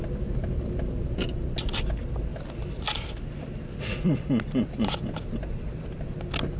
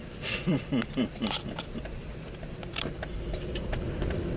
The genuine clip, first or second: first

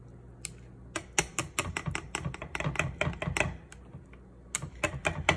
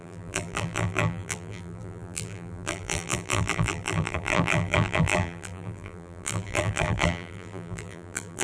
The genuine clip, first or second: first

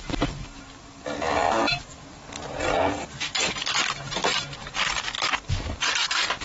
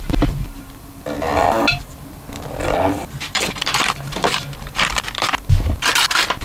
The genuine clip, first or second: first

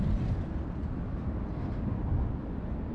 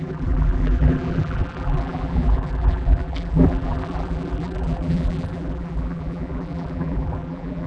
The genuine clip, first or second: first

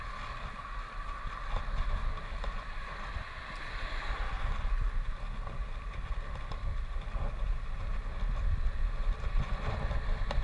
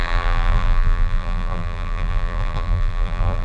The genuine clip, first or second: first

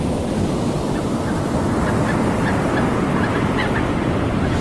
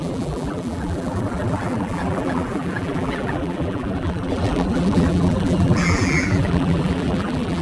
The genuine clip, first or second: first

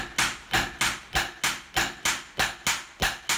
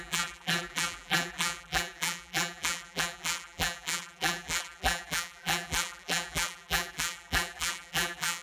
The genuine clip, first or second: first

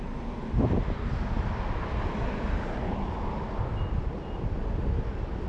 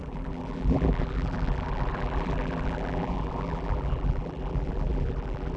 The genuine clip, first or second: first